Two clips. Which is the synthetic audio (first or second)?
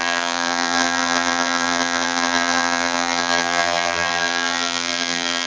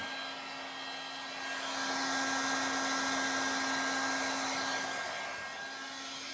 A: first